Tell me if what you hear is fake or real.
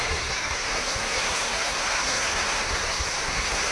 fake